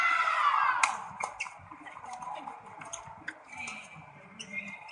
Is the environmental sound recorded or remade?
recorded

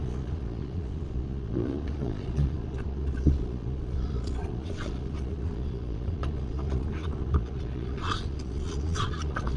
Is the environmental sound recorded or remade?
remade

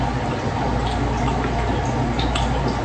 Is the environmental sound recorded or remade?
recorded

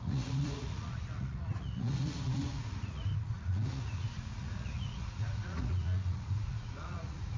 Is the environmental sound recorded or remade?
remade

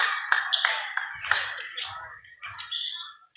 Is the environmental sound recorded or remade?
recorded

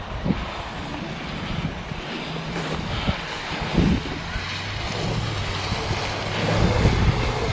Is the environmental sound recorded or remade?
recorded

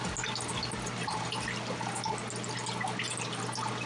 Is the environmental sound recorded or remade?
recorded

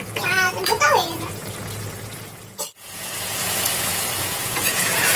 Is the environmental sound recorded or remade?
remade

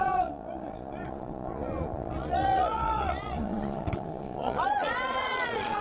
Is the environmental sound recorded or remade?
remade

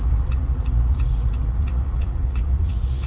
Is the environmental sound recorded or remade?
remade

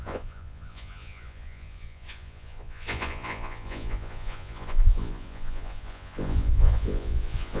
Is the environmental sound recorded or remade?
remade